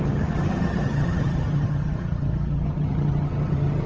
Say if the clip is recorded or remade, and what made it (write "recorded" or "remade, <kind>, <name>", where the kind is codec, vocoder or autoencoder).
remade, vocoder, HiFi-GAN